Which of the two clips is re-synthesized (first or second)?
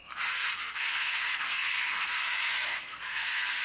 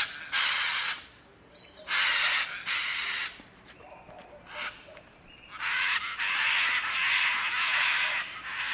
first